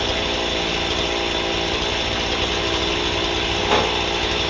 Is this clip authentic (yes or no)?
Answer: yes